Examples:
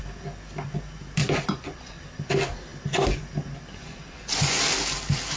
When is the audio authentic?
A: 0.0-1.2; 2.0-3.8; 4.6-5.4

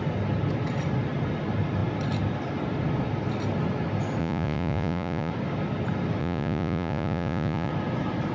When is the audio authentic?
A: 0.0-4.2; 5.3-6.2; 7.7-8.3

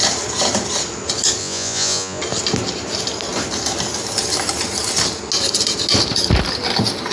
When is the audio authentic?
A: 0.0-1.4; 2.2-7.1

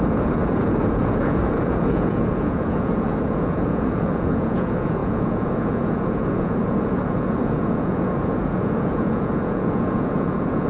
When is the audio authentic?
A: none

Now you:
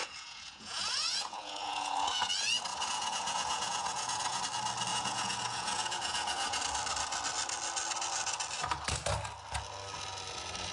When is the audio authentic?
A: 2.3-2.7; 4.4-4.9; 6.6-10.7

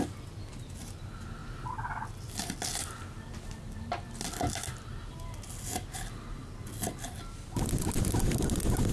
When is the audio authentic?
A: 0.0-8.9

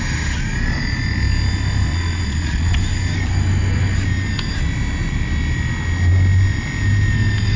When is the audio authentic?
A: 0.0-1.9; 2.8-7.6

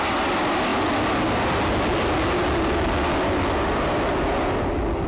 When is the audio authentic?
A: 0.0-5.1